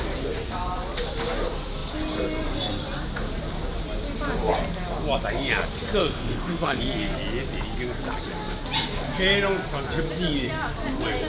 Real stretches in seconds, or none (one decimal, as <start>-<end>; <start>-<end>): 0.0-6.0; 6.8-11.3